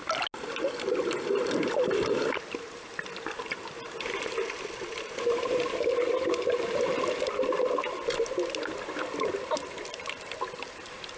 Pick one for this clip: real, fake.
real